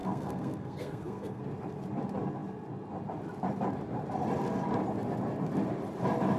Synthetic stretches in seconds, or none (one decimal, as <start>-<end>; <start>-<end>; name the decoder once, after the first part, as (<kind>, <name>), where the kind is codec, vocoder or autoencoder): 0.0-1.4 (codec, SNAC)